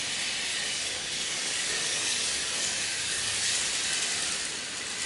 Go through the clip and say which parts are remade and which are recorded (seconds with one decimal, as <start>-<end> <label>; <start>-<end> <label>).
0.0-0.5 recorded; 0.5-3.6 remade; 3.6-5.1 recorded